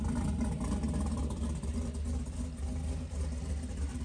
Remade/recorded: recorded